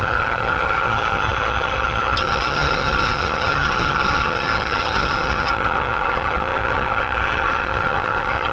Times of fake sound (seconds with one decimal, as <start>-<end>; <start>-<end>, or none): 0.0-8.5